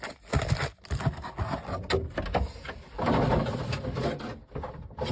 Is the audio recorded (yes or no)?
yes